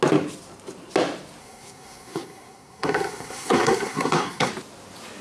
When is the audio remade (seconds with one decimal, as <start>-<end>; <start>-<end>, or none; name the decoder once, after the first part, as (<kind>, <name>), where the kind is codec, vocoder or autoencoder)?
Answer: 1.4-4.5 (codec, SNAC)